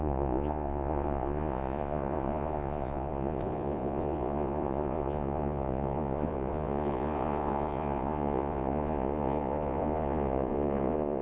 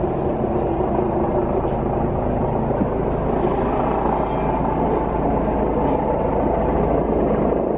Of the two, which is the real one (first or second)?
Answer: second